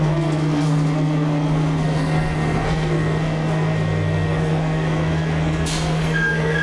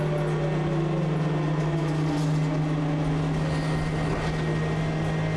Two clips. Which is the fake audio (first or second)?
first